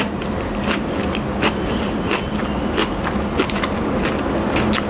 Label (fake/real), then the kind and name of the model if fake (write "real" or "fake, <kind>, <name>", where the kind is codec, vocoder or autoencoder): real